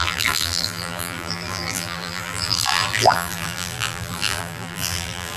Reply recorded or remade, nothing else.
remade